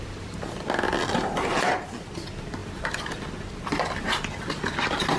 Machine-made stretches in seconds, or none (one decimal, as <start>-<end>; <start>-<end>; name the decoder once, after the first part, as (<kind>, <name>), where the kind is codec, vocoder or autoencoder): none